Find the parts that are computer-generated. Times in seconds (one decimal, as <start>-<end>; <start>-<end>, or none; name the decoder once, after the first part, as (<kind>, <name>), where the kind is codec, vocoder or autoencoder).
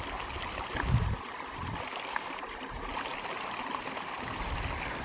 none